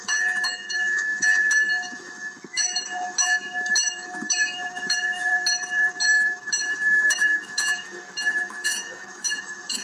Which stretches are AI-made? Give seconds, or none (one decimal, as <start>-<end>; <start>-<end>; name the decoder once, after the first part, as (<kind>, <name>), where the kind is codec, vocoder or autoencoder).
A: 0.0-5.3 (autoencoder, DAC-VAE); 6.0-9.8